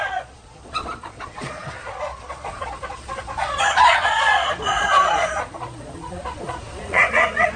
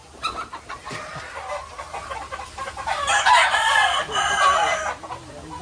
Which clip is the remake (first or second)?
first